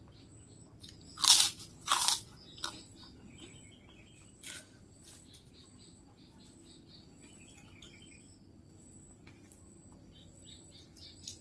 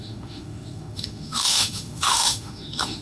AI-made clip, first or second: second